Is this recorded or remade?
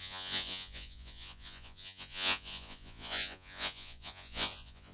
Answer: remade